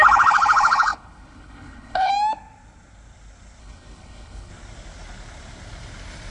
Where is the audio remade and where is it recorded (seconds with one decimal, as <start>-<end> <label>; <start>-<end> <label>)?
0.0-2.1 remade; 2.1-3.6 recorded; 3.6-4.5 remade; 4.5-6.3 recorded